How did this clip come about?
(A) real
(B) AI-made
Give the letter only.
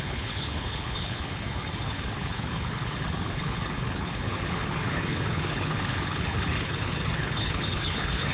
B